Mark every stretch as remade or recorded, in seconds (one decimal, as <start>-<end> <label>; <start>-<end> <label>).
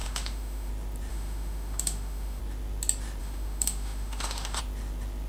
0.0-0.7 remade; 0.7-1.1 recorded; 1.1-2.4 remade; 2.4-3.2 recorded; 3.2-4.6 remade; 4.6-5.3 recorded